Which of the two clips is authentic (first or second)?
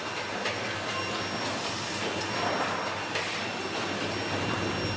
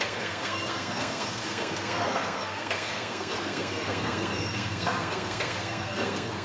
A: first